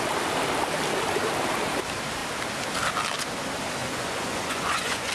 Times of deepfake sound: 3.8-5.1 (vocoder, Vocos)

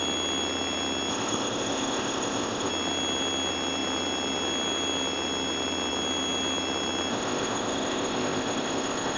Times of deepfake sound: 1.1-2.7 (codec, ZipCodec); 7.1-9.2

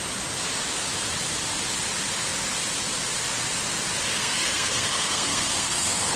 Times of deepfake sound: 4.1-6.2 (codec, SNAC)